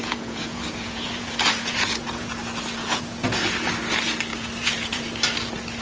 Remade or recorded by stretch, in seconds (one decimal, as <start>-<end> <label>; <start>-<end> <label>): 0.0-2.3 remade; 2.3-2.8 recorded; 2.8-3.7 remade; 3.7-4.3 recorded; 4.3-5.0 remade; 5.0-5.8 recorded